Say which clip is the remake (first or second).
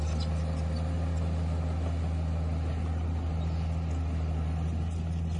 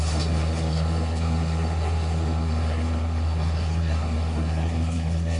second